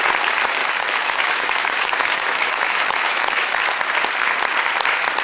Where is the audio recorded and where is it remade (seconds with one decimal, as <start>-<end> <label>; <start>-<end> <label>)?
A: 0.0-0.6 recorded; 0.6-3.7 remade; 3.7-5.2 recorded

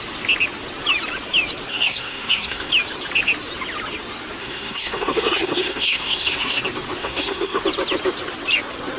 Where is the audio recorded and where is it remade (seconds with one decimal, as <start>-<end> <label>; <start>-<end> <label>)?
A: 0.0-1.7 recorded; 1.7-2.7 remade; 2.7-4.4 recorded; 4.4-6.6 remade; 6.6-7.0 recorded; 7.0-7.6 remade; 7.6-9.0 recorded